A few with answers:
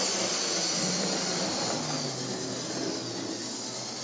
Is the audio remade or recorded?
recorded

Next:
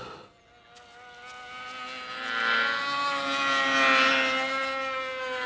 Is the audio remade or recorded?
recorded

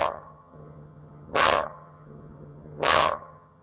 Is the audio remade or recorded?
remade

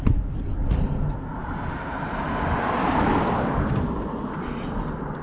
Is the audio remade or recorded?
recorded